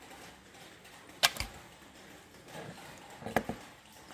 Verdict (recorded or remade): recorded